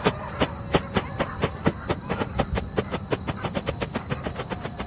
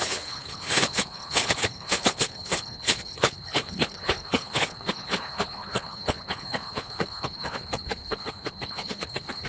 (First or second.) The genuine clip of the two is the first